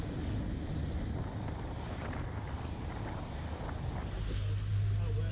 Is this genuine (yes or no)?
yes